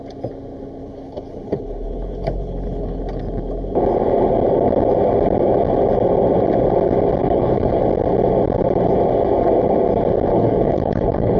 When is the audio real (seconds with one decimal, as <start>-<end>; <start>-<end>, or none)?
0.0-0.8; 3.0-7.2; 7.8-10.3